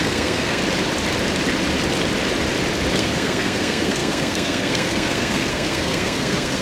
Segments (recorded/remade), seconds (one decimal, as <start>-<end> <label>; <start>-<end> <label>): 0.0-0.6 remade; 0.6-2.9 recorded; 2.9-6.6 remade